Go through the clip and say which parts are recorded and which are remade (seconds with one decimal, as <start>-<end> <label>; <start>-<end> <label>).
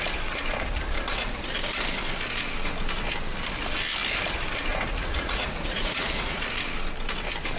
0.0-4.7 recorded; 4.7-6.5 remade; 6.5-7.6 recorded